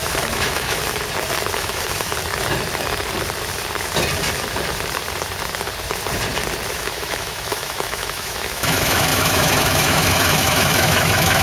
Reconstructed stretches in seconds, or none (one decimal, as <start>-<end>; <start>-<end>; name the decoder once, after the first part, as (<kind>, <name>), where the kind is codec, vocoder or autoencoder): 0.0-0.8 (autoencoder, DAC-VAE); 1.5-2.1; 6.7-11.4